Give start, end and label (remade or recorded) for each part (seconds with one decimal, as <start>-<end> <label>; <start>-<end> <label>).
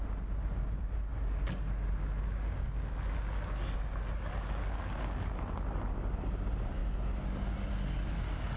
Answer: 0.0-8.6 recorded